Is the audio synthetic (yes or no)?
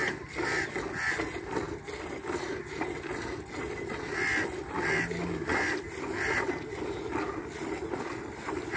no